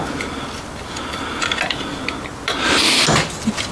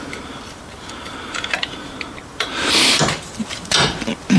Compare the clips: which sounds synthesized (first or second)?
second